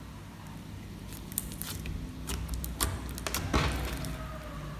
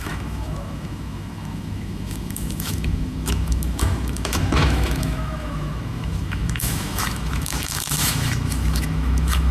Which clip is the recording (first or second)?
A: first